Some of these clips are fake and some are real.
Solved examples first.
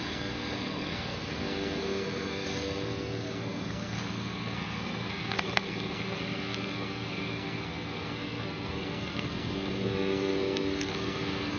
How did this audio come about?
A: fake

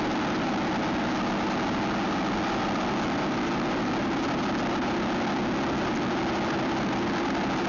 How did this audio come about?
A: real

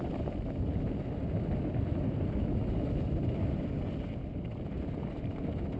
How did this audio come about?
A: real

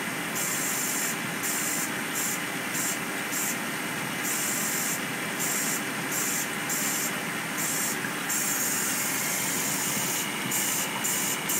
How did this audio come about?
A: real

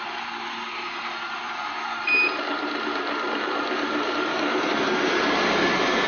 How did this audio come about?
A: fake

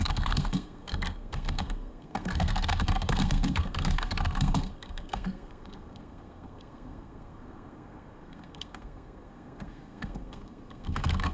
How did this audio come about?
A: fake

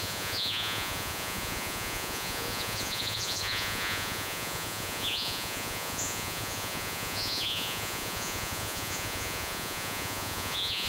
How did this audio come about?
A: fake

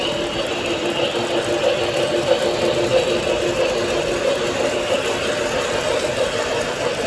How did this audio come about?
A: real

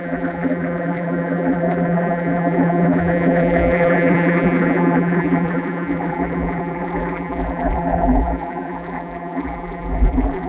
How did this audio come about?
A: fake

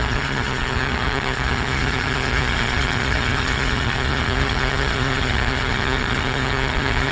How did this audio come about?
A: fake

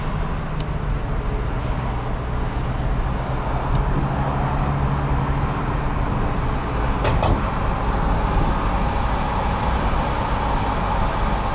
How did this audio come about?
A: real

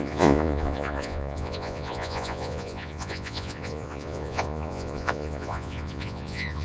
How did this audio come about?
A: fake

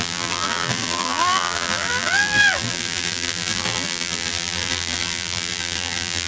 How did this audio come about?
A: fake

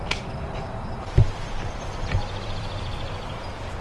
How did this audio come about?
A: fake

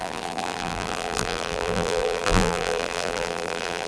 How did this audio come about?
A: fake